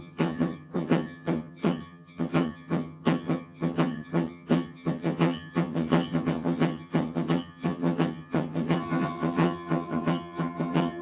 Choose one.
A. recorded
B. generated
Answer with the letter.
B